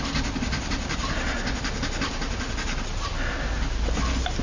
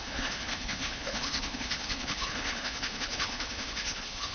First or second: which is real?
first